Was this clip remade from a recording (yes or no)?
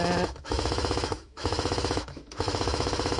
yes